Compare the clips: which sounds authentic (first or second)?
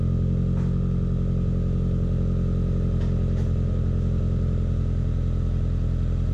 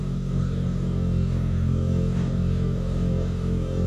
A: first